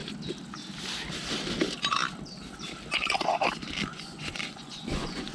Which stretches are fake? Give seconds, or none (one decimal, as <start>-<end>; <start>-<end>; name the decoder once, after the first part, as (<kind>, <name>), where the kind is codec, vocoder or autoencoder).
3.9-5.3 (vocoder, Vocos)